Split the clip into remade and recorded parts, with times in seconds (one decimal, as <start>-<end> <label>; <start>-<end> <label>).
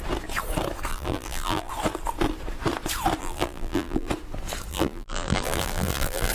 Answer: 0.0-0.9 recorded; 0.9-1.7 remade; 1.7-3.2 recorded; 3.2-4.1 remade; 4.1-4.7 recorded; 4.7-6.3 remade